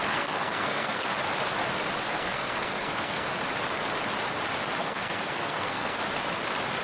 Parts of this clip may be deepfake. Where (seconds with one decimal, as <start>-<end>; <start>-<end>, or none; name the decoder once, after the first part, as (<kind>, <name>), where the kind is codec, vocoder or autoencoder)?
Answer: 0.0-1.1 (codec, SNAC); 2.1-3.3; 4.8-6.0

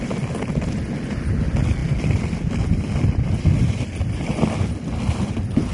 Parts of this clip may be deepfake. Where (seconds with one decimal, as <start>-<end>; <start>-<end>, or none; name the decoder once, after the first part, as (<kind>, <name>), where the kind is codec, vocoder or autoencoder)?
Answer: none

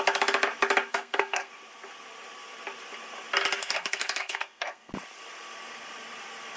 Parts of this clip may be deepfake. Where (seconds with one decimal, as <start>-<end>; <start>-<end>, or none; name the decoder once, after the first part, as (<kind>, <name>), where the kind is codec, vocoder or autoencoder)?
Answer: 0.9-1.5 (codec, SNAC); 3.6-4.9

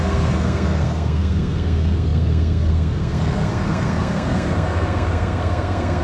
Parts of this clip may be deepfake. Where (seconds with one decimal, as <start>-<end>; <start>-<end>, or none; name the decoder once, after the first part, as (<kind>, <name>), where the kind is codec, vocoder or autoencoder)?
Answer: 0.0-6.0 (codec, SNAC)

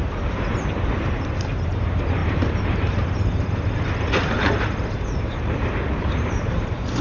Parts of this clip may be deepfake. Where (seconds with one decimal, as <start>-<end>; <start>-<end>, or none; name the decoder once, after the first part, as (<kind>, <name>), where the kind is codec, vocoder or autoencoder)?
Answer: 0.0-7.0 (vocoder, BigVGAN v2)